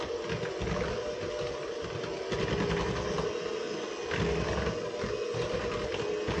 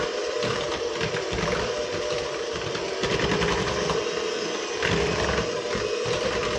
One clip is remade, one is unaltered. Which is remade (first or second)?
second